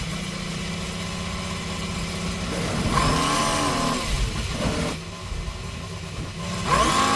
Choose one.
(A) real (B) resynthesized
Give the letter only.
A